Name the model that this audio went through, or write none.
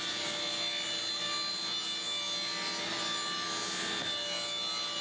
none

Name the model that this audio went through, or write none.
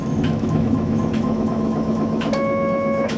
autoencoder, DAC-VAE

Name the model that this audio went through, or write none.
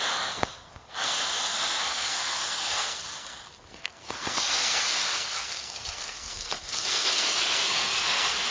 codec, SNAC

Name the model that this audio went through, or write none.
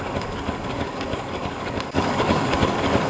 codec, DAC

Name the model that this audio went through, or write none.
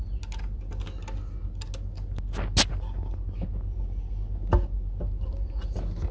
none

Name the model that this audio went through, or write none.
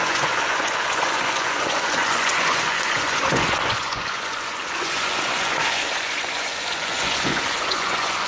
vocoder, Vocos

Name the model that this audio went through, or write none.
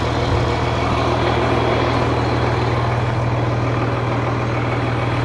none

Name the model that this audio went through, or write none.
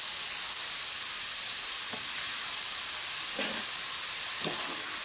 none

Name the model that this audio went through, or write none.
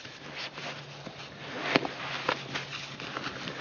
none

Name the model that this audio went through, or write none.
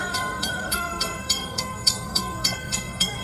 codec, SNAC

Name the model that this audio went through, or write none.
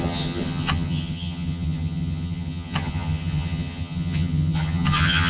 vocoder, HiFi-GAN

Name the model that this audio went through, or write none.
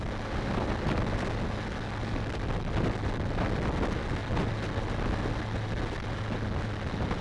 none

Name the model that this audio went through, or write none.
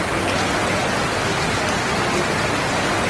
none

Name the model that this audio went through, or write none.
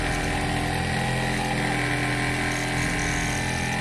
none